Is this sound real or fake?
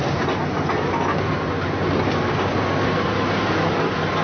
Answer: real